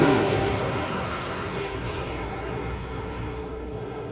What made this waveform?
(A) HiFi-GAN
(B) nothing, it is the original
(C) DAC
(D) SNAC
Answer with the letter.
D